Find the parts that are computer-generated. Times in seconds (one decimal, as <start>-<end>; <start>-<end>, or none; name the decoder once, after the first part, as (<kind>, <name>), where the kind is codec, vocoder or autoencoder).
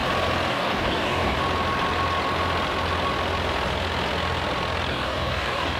0.5-1.4 (codec, DAC); 4.9-5.8